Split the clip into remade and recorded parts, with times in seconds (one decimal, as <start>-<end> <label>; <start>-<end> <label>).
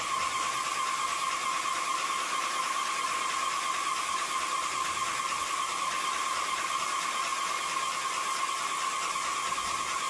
0.0-10.1 recorded